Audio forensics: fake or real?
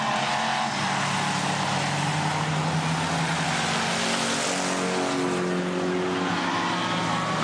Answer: real